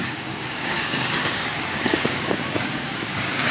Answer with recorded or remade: remade